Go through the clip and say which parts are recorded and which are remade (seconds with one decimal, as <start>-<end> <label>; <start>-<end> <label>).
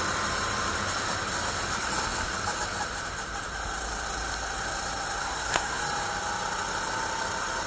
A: 0.0-5.2 recorded; 5.2-5.8 remade; 5.8-7.7 recorded